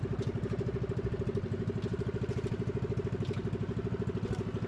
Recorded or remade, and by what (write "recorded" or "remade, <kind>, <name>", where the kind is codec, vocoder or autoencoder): recorded